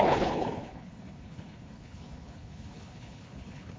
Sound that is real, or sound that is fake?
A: fake